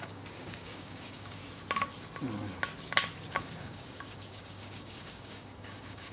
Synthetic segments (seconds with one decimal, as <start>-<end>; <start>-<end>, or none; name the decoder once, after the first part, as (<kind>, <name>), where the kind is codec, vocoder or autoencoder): 0.0-1.4 (codec, DAC); 3.3-6.1